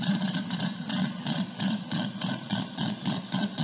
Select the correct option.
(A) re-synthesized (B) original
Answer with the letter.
A